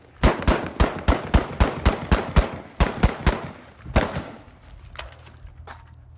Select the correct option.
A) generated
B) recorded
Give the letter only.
B